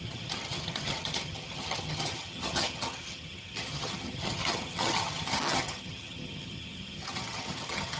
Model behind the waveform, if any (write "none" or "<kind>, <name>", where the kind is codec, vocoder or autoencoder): vocoder, HiFi-GAN